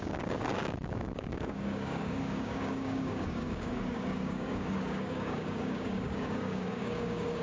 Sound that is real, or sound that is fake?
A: fake